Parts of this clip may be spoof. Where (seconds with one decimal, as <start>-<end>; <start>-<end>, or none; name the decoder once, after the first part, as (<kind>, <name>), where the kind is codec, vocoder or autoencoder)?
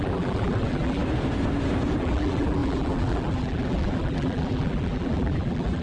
0.0-1.0 (vocoder, BigVGAN v2); 2.0-5.8